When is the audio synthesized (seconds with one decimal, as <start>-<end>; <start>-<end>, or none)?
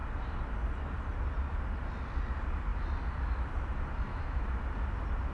4.1-4.6